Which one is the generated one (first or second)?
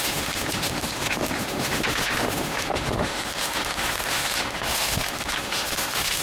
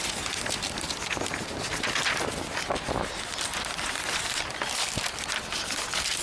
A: first